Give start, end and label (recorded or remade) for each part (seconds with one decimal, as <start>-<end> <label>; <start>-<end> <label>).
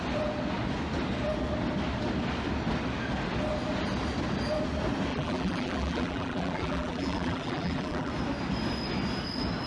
0.0-5.1 recorded; 5.1-8.1 remade; 8.1-9.7 recorded